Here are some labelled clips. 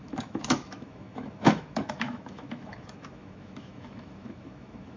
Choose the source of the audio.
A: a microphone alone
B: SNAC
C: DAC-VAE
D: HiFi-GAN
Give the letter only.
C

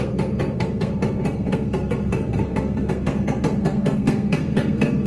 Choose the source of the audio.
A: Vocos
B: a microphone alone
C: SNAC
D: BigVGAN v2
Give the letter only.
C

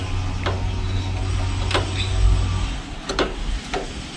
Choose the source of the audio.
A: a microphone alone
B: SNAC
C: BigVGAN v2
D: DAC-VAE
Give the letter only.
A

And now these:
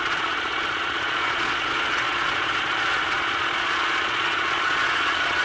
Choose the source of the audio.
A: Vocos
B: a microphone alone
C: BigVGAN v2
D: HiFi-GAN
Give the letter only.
A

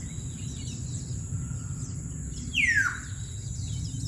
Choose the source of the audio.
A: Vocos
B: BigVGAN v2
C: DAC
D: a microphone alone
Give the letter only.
D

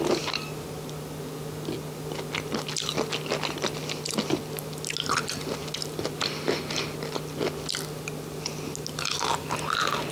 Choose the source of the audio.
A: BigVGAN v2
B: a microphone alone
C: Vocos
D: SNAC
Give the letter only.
B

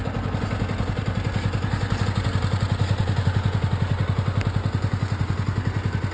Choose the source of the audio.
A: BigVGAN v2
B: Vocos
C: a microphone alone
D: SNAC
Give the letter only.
C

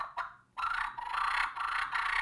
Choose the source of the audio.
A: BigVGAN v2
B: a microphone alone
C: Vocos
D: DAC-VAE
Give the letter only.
B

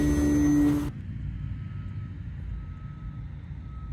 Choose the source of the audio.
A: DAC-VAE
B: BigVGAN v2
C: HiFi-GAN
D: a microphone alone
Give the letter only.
D